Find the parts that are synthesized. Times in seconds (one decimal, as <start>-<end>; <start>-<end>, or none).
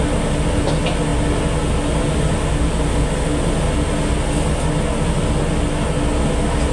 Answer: none